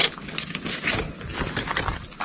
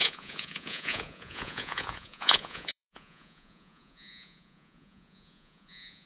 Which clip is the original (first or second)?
first